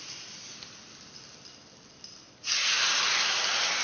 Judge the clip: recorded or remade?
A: recorded